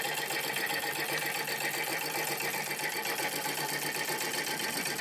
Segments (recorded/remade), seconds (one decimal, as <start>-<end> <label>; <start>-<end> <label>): 0.0-5.0 recorded